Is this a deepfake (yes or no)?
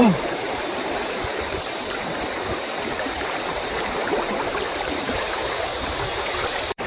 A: yes